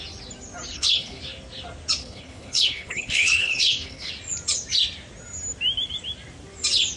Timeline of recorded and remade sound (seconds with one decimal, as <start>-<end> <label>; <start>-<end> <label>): 0.0-0.7 recorded; 0.7-1.2 remade; 1.2-2.0 recorded; 2.0-4.1 remade; 4.1-7.0 recorded